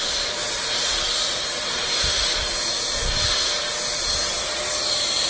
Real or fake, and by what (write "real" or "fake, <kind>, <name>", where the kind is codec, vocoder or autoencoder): real